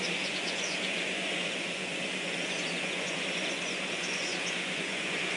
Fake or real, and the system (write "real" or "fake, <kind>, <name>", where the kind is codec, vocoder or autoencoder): fake, vocoder, Vocos